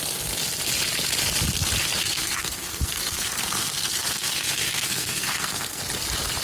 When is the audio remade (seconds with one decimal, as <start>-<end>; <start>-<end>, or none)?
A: 2.0-5.8